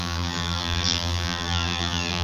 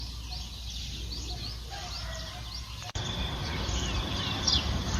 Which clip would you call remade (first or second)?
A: first